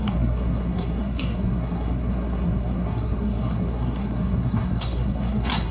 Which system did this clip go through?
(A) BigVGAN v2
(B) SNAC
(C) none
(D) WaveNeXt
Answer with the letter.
B